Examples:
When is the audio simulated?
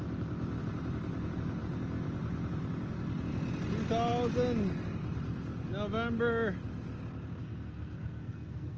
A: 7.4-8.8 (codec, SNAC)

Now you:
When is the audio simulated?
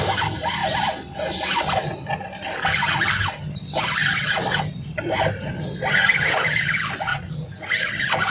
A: 7.1-7.9 (vocoder, Vocos)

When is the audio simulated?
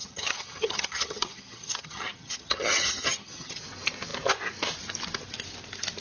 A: 0.0-3.6 (vocoder, HiFi-GAN)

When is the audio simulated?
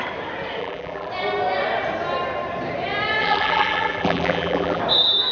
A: 0.6-1.1 (vocoder, BigVGAN v2); 3.2-4.8